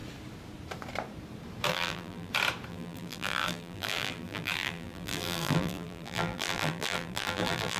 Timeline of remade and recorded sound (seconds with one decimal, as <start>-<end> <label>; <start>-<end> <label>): 0.0-1.7 recorded; 1.7-2.3 remade; 2.3-2.7 recorded; 2.7-7.8 remade